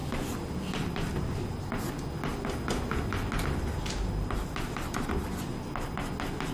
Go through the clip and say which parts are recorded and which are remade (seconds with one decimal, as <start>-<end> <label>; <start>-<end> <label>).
0.0-6.5 recorded